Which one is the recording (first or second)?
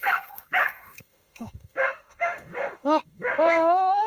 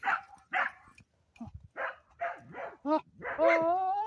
second